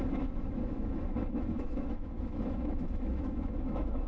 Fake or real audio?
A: fake